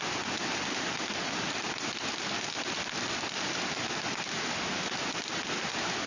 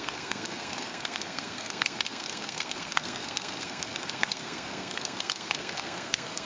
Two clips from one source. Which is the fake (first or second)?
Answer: second